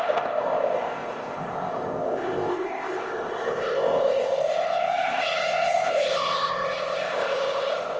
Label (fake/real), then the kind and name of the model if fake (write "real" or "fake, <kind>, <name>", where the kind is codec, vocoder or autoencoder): fake, codec, ZipCodec